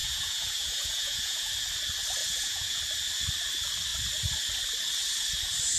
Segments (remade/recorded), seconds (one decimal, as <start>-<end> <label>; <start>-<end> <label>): 0.0-1.5 remade; 1.5-2.2 recorded; 2.2-2.8 remade; 2.8-5.8 recorded